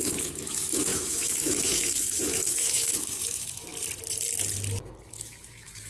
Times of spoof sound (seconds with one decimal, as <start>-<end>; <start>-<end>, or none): 0.0-3.7; 5.1-5.9